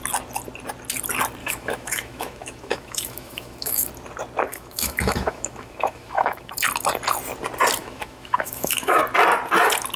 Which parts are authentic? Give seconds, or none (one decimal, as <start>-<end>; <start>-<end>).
0.0-1.4; 3.9-4.5; 6.5-7.8; 9.0-10.0